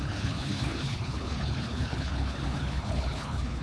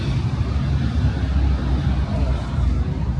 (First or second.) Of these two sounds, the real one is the second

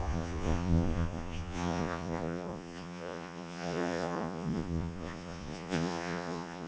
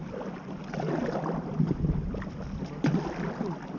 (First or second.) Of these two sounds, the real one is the second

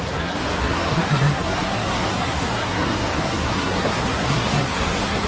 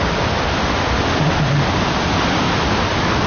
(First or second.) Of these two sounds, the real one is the second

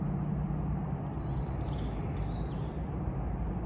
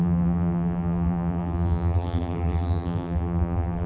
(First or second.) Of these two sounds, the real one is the first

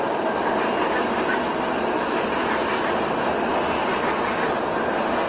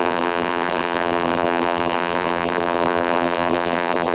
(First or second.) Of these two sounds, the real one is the first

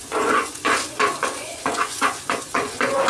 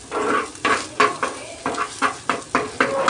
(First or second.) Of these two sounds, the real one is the second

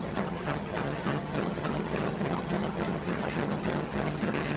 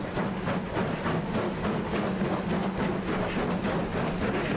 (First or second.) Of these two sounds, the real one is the second